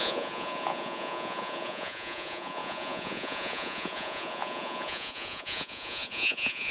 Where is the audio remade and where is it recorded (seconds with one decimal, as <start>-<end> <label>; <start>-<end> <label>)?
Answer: 0.0-6.7 remade